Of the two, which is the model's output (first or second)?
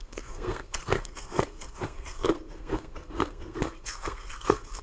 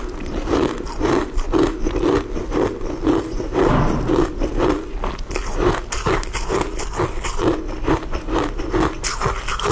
first